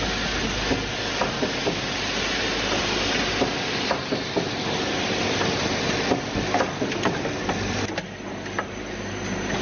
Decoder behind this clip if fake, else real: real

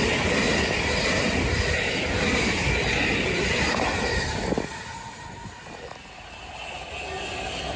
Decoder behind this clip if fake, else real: real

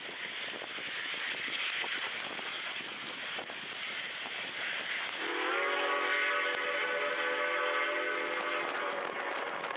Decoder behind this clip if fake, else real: real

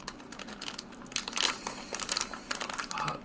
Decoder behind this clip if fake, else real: real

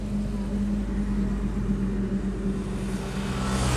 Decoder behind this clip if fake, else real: real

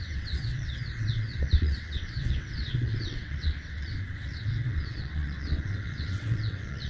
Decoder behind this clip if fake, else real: fake, vocoder, WaveNeXt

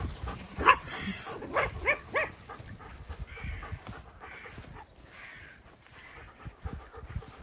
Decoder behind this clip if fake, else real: real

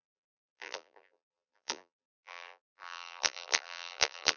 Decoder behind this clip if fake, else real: fake, vocoder, BigVGAN v2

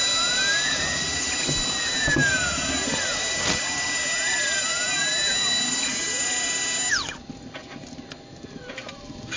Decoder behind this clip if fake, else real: real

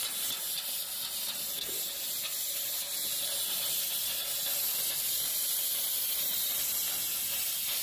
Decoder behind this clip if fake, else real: real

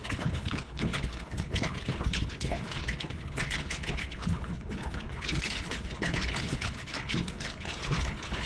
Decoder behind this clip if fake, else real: fake, codec, HILCodec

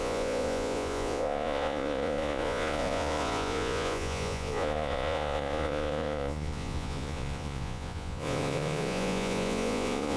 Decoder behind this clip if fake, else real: fake, vocoder, Vocos